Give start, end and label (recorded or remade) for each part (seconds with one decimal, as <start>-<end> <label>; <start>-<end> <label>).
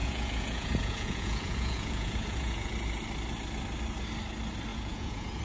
0.0-2.7 remade; 2.7-4.7 recorded; 4.7-5.4 remade